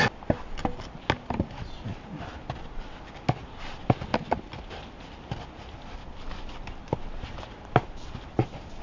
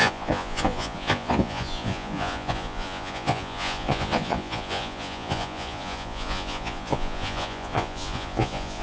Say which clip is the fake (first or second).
second